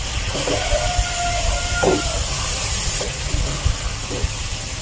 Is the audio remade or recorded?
recorded